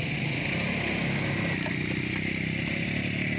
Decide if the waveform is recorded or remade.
recorded